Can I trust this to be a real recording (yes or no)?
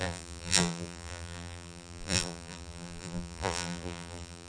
no